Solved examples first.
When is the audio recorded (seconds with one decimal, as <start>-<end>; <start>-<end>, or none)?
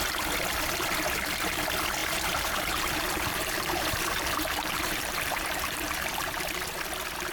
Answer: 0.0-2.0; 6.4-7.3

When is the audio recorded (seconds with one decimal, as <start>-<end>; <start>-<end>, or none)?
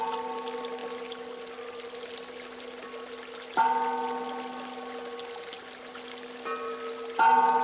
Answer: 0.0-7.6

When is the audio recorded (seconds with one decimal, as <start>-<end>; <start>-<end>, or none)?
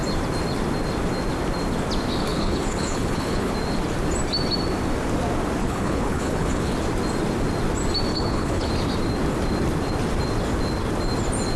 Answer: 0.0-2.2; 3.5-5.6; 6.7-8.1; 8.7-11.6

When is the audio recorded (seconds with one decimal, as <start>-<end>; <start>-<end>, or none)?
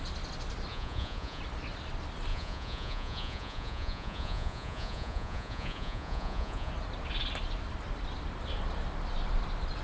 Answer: 0.0-0.7; 1.4-2.3; 6.7-9.8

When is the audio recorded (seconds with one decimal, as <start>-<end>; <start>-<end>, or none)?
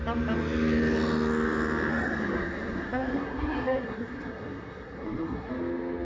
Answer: 0.0-1.9; 5.5-6.0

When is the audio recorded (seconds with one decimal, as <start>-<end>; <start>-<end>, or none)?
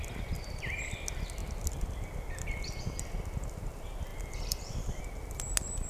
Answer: 0.0-4.1; 5.0-5.9